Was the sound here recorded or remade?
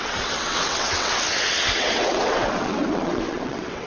remade